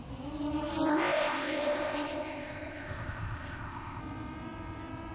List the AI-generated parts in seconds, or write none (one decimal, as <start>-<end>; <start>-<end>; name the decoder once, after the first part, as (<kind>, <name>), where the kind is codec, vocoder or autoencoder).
0.9-4.0 (codec, ZipCodec)